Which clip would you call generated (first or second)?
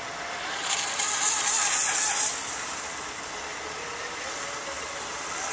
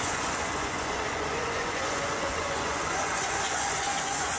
second